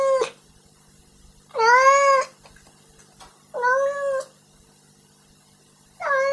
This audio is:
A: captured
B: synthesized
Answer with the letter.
A